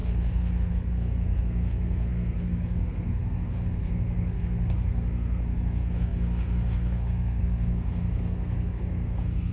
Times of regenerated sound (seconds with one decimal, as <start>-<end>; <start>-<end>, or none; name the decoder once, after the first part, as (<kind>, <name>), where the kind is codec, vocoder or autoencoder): 0.0-9.5 (codec, SNAC)